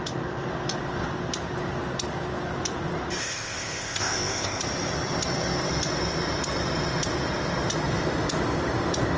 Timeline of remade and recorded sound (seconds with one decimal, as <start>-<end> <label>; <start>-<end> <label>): 0.0-3.2 recorded; 3.2-4.6 remade; 4.6-9.2 recorded